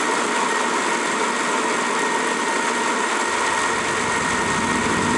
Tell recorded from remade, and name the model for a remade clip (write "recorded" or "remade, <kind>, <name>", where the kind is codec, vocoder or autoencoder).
recorded